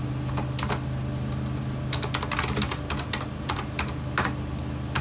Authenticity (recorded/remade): recorded